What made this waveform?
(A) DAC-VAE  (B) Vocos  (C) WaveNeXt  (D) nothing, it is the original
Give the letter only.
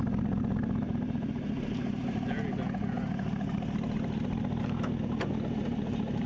D